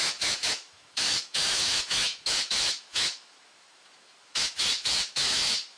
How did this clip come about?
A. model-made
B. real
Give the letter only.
A